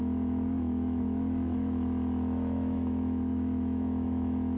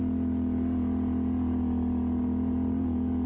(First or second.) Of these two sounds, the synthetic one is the first